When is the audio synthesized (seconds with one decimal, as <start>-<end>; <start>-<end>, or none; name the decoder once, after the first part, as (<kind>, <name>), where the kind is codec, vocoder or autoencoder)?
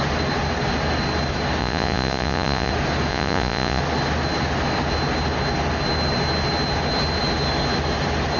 1.6-2.7 (vocoder, Vocos); 3.1-3.8